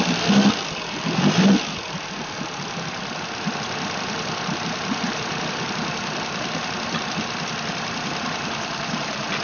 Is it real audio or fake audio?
fake